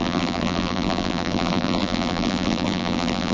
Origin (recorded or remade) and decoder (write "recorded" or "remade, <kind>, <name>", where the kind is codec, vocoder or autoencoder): remade, vocoder, BigVGAN v2